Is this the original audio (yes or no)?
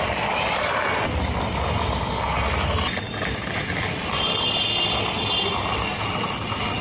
yes